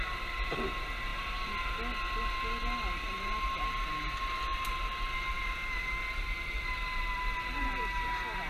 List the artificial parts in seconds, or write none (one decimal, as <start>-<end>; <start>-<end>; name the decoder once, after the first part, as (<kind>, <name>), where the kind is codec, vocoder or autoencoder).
none